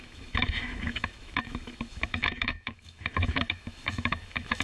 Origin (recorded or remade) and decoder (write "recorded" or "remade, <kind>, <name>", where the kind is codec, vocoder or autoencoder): remade, autoencoder, DAC-VAE